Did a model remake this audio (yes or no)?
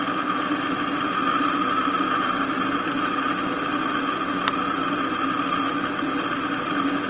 no